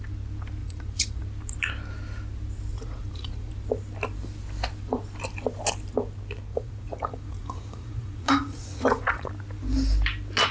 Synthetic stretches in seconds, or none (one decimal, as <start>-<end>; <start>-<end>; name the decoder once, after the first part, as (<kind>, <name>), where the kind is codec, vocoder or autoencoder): 0.6-1.2 (vocoder, Vocos); 2.7-3.5; 6.5-9.3